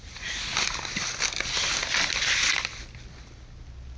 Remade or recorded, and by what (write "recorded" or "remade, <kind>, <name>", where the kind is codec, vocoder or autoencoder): recorded